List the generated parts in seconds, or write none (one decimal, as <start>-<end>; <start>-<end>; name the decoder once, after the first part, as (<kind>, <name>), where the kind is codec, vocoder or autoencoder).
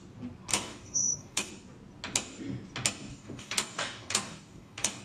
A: 0.5-1.5 (codec, DAC); 3.1-5.0